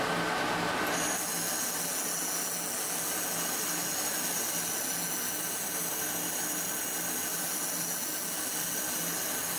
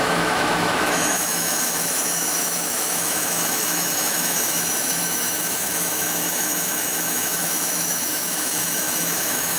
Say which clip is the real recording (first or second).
first